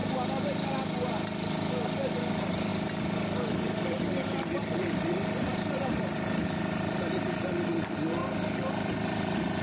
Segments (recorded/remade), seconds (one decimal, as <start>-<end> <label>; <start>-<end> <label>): 0.0-2.3 recorded; 2.3-2.7 remade; 2.7-4.6 recorded; 4.6-8.2 remade; 8.2-8.9 recorded; 8.9-9.6 remade